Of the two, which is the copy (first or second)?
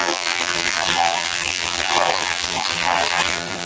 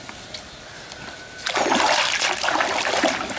first